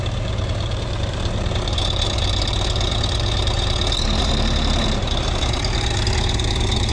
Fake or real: fake